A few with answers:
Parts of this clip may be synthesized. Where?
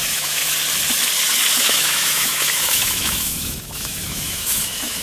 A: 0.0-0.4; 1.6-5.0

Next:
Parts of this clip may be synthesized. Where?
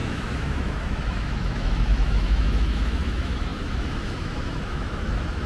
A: 0.0-5.5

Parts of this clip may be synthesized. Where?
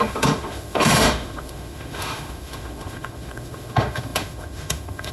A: 0.0-5.1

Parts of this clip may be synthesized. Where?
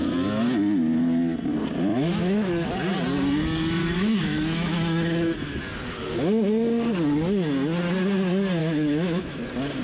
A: 1.9-2.7; 3.8-5.6; 8.6-9.4